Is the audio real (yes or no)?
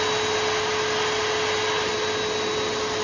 yes